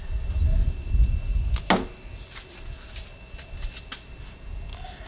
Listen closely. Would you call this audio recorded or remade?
recorded